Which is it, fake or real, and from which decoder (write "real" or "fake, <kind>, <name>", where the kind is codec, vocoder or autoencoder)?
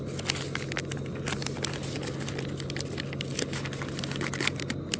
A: real